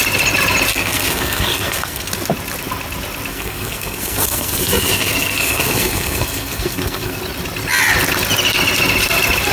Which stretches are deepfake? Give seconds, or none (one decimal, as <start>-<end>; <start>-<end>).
0.7-2.1; 3.3-7.2